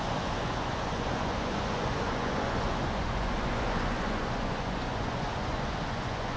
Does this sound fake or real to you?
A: fake